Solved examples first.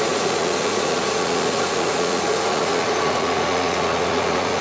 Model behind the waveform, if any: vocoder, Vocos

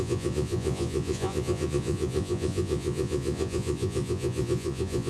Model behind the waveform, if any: vocoder, Vocos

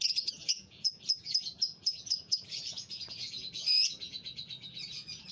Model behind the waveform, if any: vocoder, Vocos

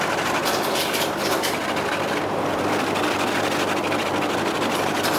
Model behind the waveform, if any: none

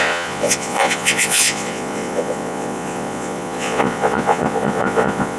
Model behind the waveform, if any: vocoder, Vocos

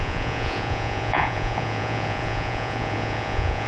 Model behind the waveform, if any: vocoder, Vocos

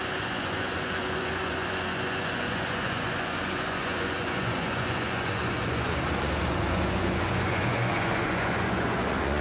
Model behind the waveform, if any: vocoder, Vocos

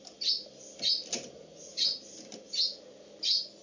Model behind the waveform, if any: none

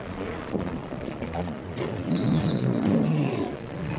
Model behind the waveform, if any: vocoder, Vocos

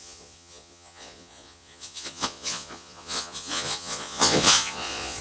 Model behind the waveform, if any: vocoder, Vocos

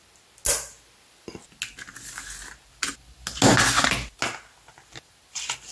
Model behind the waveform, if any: none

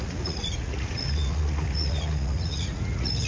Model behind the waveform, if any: vocoder, Vocos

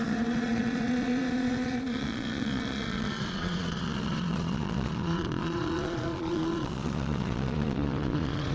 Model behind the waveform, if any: vocoder, Vocos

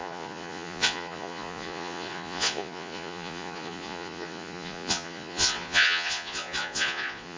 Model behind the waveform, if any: vocoder, Vocos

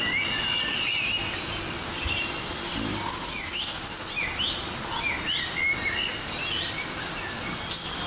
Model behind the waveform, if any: none